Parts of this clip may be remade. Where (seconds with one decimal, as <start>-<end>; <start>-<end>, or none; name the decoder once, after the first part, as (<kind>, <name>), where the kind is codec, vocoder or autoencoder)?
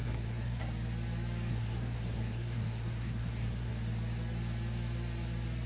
0.0-0.6 (codec, SNAC); 1.5-3.7